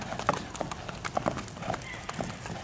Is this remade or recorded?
recorded